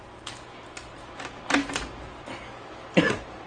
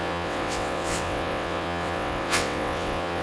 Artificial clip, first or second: second